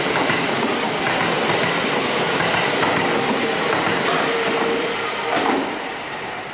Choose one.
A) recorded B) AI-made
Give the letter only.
A